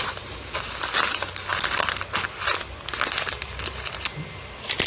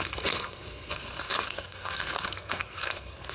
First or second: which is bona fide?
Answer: first